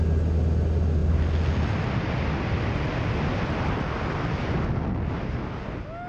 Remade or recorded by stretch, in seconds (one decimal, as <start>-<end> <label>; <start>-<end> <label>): 0.0-6.1 recorded